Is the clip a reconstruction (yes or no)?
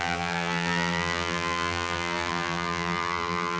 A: yes